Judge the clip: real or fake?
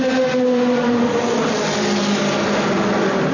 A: real